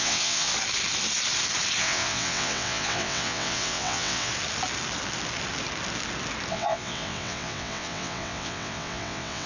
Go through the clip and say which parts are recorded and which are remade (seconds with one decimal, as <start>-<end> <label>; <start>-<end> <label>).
0.0-0.5 remade; 0.5-1.8 recorded; 1.8-4.3 remade; 4.3-6.5 recorded; 6.5-9.5 remade